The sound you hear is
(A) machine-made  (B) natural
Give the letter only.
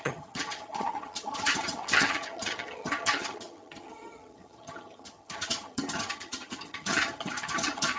A